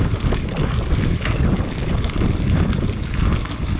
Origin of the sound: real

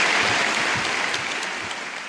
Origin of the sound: real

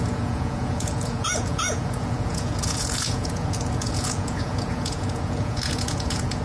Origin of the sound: fake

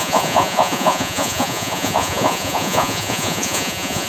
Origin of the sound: fake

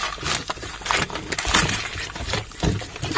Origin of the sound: real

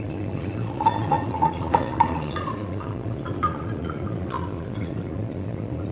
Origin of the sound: fake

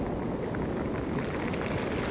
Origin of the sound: real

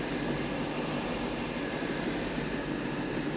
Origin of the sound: real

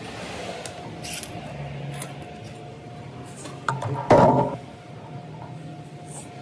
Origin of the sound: real